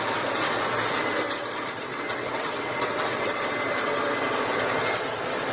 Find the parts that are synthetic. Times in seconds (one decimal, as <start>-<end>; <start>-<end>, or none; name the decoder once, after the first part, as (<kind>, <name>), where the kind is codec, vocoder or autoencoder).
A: 1.9-3.4 (vocoder, WaveNeXt)